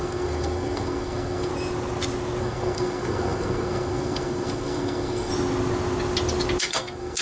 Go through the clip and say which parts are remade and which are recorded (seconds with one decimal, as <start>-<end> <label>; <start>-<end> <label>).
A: 0.0-1.5 remade; 1.5-2.4 recorded; 2.4-5.3 remade; 5.3-6.6 recorded; 6.6-7.2 remade